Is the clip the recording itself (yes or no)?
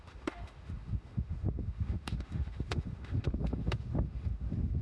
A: no